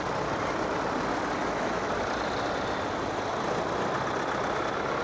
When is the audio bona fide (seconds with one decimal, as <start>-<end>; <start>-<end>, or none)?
0.0-1.4; 1.9-5.0